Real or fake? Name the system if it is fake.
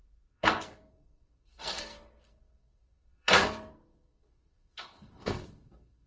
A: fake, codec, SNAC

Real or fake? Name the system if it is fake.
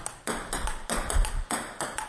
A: real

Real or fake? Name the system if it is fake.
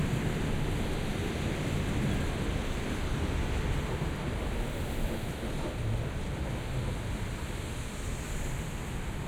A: real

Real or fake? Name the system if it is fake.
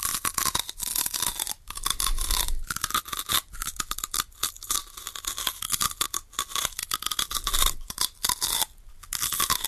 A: real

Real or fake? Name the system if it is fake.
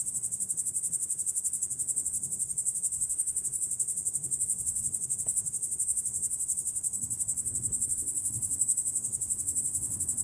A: fake, codec, SNAC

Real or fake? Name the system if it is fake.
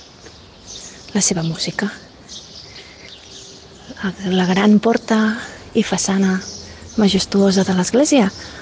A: real